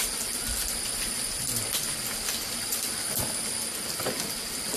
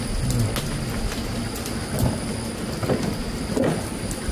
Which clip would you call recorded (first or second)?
second